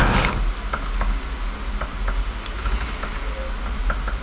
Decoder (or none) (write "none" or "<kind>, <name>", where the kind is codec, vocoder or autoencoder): none